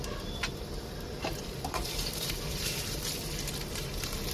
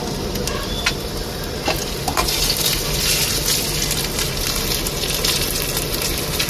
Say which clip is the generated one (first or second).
first